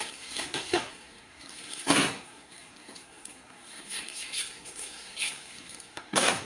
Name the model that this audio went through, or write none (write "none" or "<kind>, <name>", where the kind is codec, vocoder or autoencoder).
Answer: codec, SNAC